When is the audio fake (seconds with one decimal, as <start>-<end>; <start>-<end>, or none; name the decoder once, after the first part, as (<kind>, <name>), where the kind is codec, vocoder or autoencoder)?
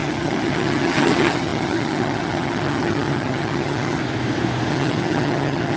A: 0.0-4.0 (vocoder, HiFi-GAN); 4.7-5.8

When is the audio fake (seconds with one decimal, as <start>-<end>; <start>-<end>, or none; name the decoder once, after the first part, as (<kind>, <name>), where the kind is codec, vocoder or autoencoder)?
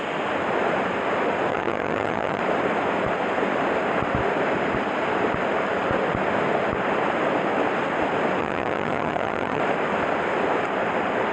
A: 1.5-2.4 (vocoder, HiFi-GAN); 8.4-9.6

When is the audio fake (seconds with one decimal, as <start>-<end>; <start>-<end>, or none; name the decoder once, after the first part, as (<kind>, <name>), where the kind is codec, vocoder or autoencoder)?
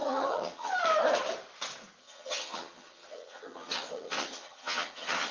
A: 0.0-0.7 (vocoder, HiFi-GAN); 2.0-5.3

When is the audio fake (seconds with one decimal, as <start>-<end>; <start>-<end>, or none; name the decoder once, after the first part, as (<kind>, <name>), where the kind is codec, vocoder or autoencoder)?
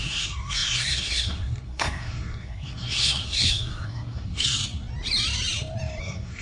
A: 0.0-4.6 (codec, SNAC); 6.0-6.4